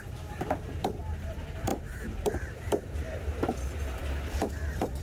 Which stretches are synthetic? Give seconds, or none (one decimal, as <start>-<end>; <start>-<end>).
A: 0.0-5.0